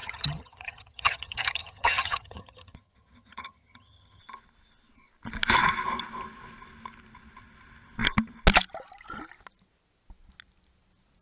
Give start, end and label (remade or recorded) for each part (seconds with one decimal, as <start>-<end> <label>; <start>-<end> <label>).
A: 0.0-4.2 remade; 4.2-11.2 recorded